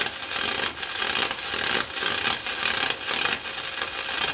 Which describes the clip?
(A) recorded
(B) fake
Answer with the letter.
A